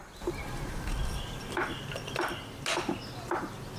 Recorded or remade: recorded